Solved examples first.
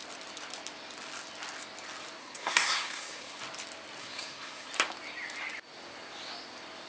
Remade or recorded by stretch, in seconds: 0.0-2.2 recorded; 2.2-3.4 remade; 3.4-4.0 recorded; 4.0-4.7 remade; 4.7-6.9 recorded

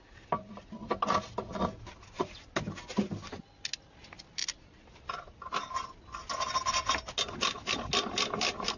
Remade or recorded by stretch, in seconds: 0.0-8.8 recorded

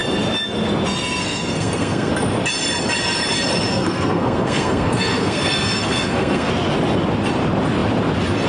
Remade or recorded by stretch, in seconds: 0.0-1.2 recorded; 1.2-2.1 remade; 2.1-3.7 recorded; 3.7-6.5 remade; 6.5-8.5 recorded

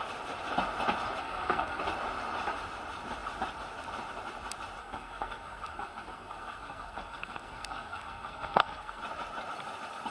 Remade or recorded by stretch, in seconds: 0.0-1.2 recorded; 1.2-1.8 remade; 1.8-4.8 recorded; 4.8-9.0 remade; 9.0-10.1 recorded